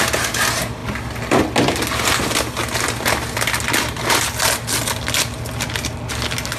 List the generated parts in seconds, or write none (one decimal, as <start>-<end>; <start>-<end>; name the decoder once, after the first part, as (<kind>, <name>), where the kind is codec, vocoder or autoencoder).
none

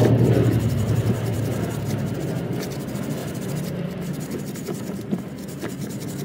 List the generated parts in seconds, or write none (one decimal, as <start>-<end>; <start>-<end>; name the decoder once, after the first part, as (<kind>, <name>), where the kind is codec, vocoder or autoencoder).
0.0-1.8 (vocoder, BigVGAN v2); 3.2-4.4

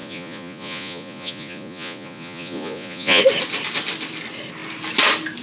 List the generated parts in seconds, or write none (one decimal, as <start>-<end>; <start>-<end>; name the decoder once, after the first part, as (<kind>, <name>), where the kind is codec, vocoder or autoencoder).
0.0-3.2 (vocoder, Vocos)

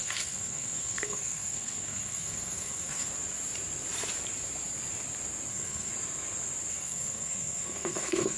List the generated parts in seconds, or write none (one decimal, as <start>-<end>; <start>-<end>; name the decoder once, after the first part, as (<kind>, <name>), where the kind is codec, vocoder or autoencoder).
0.0-3.1 (codec, SNAC); 5.5-5.9; 6.7-8.4

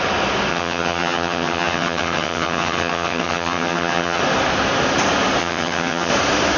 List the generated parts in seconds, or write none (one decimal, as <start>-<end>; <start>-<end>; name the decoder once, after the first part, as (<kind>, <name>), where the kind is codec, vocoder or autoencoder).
0.5-4.2 (vocoder, HiFi-GAN); 5.4-6.1

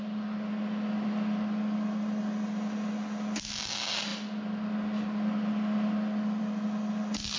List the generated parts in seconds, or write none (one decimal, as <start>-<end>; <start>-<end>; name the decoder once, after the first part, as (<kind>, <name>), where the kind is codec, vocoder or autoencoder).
none

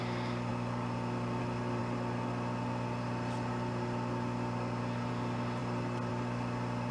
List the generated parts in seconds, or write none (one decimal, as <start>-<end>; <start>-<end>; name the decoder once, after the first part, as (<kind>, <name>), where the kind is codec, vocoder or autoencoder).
none

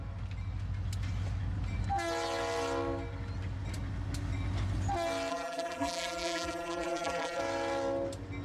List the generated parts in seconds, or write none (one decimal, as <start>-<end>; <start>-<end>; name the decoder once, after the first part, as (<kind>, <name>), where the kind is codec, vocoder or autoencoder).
5.3-7.4 (vocoder, BigVGAN v2)